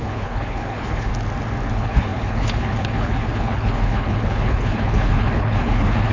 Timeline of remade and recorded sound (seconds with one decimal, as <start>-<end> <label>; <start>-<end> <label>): 0.0-1.1 remade; 1.1-1.7 recorded; 1.7-6.1 remade